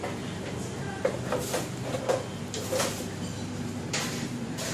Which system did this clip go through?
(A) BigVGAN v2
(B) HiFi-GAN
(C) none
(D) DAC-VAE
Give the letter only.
C